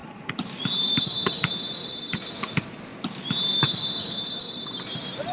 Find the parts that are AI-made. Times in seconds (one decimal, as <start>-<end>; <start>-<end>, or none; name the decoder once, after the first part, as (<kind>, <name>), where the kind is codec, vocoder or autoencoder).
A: 0.0-2.9 (vocoder, BigVGAN v2); 4.4-5.3